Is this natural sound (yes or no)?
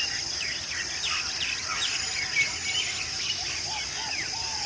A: yes